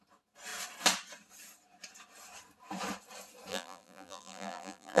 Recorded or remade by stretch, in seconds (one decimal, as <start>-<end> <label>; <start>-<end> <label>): 0.0-3.5 recorded; 3.5-5.0 remade